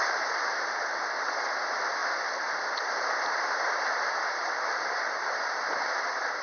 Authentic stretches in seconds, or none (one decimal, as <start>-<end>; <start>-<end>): 0.0-2.0; 3.7-6.4

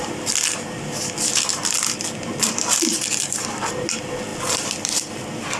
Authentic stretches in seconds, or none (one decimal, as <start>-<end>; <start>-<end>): 0.0-4.3; 5.1-5.6

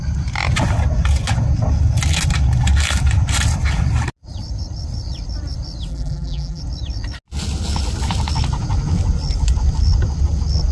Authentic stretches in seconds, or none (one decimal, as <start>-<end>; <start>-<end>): 0.0-5.9; 6.6-10.7

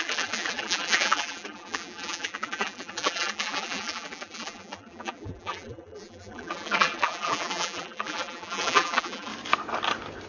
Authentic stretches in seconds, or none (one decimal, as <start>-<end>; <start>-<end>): 9.3-10.3